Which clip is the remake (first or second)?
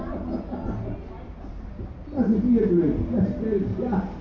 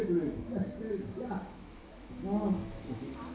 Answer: second